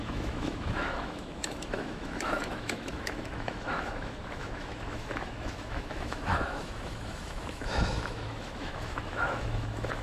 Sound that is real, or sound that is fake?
fake